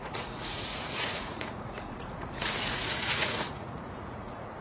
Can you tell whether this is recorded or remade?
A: remade